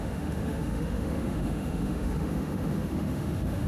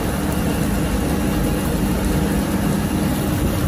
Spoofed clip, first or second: first